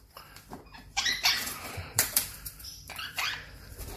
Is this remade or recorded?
remade